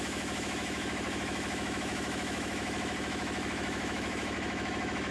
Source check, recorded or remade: remade